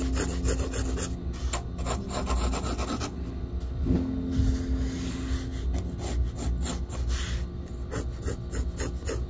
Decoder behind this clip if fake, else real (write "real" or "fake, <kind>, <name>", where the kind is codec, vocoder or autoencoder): real